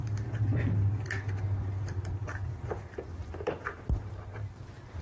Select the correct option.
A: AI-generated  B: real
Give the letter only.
A